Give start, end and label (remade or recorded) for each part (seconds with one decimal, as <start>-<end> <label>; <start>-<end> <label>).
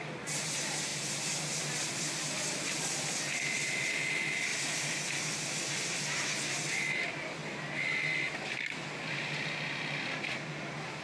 0.0-0.9 recorded; 0.9-3.9 remade; 3.9-4.5 recorded; 4.5-5.9 remade; 5.9-11.0 recorded